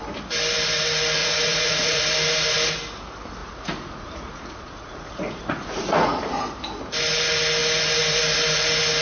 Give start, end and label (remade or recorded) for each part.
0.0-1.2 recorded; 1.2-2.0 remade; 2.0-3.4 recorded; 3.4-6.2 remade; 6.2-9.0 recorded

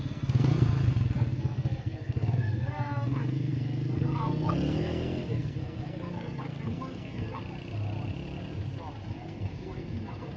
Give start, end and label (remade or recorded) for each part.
0.0-7.4 remade; 7.4-9.1 recorded; 9.1-10.4 remade

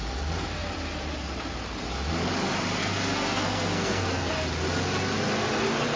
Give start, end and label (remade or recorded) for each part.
0.0-2.8 recorded; 2.8-4.3 remade; 4.3-6.0 recorded

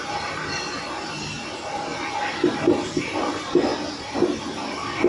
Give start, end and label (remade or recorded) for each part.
0.0-5.1 recorded

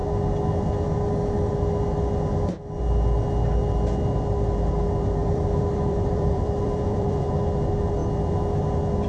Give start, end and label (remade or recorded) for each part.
0.0-5.2 recorded; 5.2-7.2 remade; 7.2-9.1 recorded

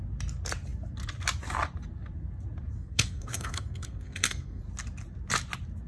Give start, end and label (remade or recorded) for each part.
0.0-2.8 recorded; 2.8-4.6 remade; 4.6-5.9 recorded

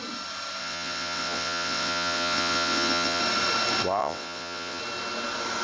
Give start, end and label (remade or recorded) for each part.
0.0-0.6 recorded; 0.6-3.2 remade; 3.2-4.0 recorded; 4.0-4.8 remade; 4.8-5.6 recorded

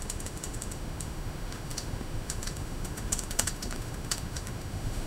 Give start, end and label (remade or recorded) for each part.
0.0-5.1 remade